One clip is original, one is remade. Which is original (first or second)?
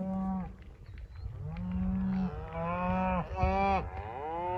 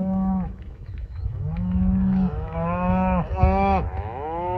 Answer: first